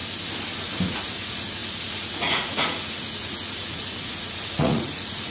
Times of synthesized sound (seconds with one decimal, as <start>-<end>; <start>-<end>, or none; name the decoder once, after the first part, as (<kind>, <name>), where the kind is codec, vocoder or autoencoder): 0.6-5.3 (vocoder, Vocos)